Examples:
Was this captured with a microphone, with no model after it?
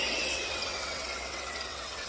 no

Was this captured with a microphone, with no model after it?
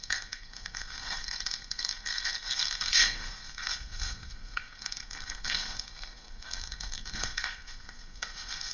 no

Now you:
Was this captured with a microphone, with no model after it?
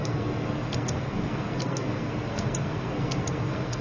no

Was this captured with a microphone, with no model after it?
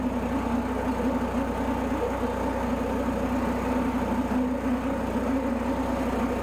yes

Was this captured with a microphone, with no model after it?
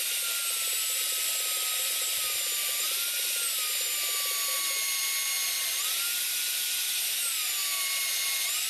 yes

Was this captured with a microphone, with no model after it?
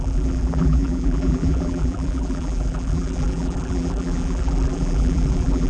no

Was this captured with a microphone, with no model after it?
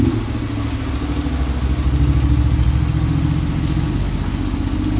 yes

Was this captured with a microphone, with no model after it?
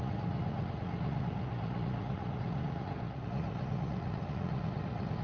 no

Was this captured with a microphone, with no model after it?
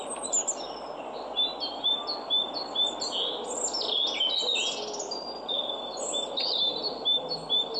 yes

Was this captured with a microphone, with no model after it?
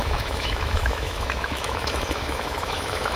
no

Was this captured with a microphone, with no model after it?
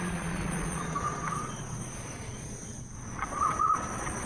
no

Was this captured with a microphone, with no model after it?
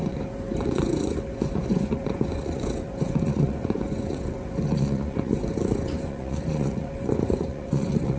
no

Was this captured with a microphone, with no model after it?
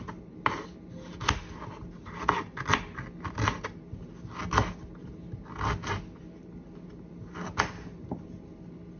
yes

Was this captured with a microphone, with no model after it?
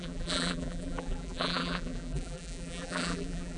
no